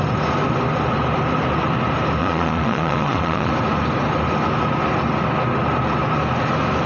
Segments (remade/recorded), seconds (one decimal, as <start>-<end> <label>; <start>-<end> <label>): 0.0-2.2 recorded; 2.2-3.5 remade; 3.5-6.9 recorded